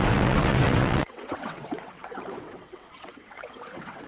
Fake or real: fake